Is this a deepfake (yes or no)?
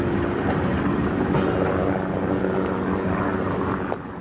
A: no